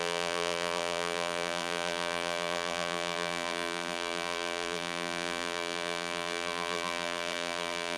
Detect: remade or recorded remade